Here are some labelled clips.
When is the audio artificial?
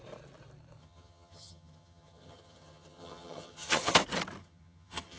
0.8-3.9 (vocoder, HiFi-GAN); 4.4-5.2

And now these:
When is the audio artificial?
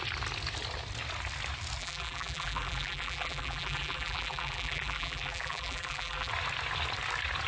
1.8-6.3 (vocoder, BigVGAN v2)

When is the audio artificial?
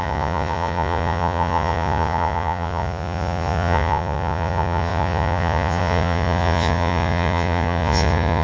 0.0-8.4 (vocoder, Vocos)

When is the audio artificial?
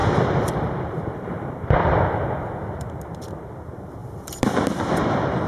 0.0-1.1 (vocoder, BigVGAN v2); 4.0-5.5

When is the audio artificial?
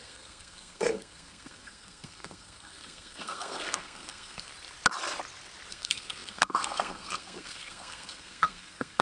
0.0-4.5 (codec, SNAC); 5.7-9.0